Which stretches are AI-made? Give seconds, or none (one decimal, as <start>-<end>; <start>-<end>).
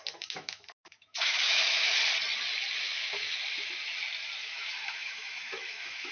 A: 0.0-2.0; 2.8-3.4; 4.4-6.1